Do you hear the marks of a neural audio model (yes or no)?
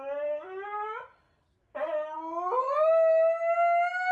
no